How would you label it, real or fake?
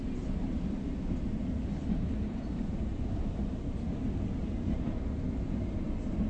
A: real